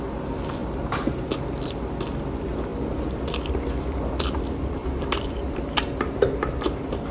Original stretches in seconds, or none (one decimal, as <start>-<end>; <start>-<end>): 0.0-0.6; 1.5-4.8; 6.6-7.1